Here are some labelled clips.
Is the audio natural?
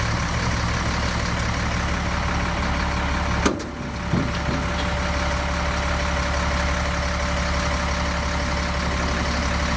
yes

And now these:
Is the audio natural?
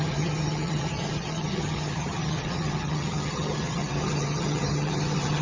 no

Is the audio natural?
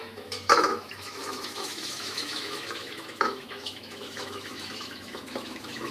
no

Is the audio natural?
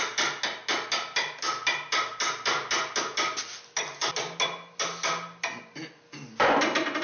yes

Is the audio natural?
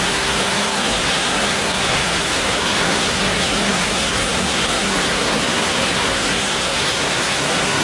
no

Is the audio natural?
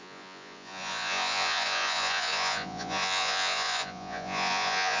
no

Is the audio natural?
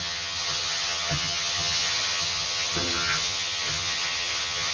no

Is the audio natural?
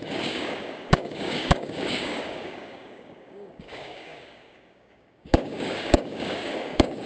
no